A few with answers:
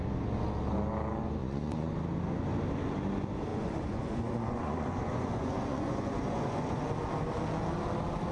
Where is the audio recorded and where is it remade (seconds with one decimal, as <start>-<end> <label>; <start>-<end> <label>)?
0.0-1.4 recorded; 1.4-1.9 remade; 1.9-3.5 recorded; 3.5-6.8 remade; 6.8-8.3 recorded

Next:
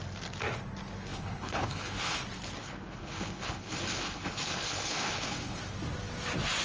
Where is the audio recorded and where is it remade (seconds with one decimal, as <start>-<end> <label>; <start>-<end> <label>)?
0.0-1.1 recorded; 1.1-2.2 remade; 2.2-2.6 recorded; 2.6-5.6 remade; 5.6-6.6 recorded

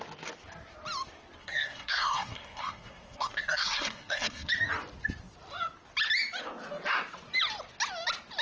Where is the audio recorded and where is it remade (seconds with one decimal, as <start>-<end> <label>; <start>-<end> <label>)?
0.0-1.4 recorded; 1.4-4.5 remade; 4.5-8.4 recorded